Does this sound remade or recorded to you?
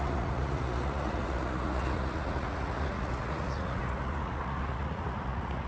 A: remade